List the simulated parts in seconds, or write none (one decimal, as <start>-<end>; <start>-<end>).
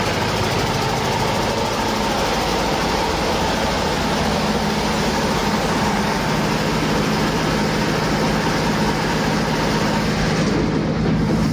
2.5-3.1; 5.4-6.2